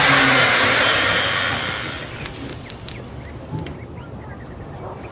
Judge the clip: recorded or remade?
recorded